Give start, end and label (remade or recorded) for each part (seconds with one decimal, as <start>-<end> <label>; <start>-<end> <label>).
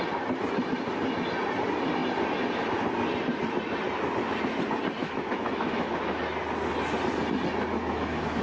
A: 0.0-5.0 recorded; 5.0-6.2 remade; 6.2-7.7 recorded; 7.7-8.4 remade